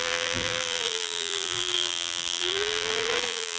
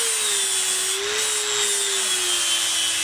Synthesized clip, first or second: first